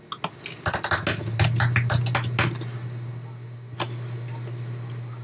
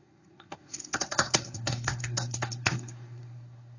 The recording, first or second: first